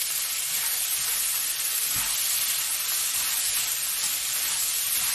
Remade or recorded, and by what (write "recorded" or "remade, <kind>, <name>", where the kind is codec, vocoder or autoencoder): recorded